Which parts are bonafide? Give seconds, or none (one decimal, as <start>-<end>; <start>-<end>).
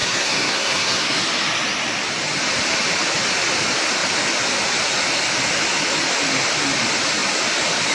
1.2-7.9